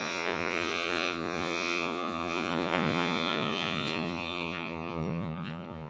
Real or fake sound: fake